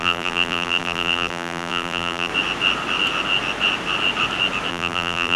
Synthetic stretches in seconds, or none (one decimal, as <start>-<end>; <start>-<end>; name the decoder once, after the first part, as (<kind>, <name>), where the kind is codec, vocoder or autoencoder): 0.0-2.3 (vocoder, BigVGAN v2); 4.7-5.4